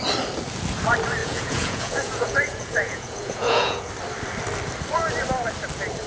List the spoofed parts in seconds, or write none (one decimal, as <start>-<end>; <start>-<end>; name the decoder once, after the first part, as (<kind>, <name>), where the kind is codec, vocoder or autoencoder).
1.2-3.9 (vocoder, Vocos)